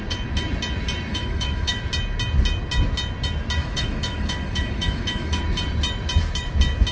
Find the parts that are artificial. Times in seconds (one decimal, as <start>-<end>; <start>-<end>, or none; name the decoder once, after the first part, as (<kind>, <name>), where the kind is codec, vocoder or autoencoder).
1.1-1.8 (autoencoder, DAC-VAE); 3.6-5.4